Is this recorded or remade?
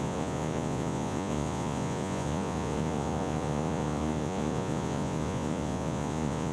remade